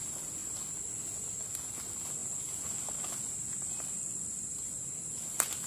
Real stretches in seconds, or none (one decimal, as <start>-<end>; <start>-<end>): 0.0-5.7